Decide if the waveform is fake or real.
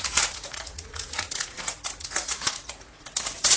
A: fake